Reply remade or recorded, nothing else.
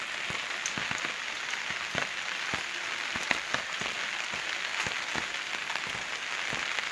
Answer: recorded